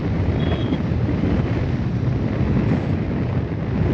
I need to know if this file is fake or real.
real